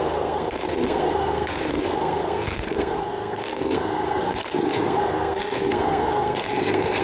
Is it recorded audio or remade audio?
remade